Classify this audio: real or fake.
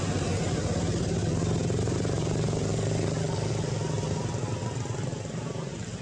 real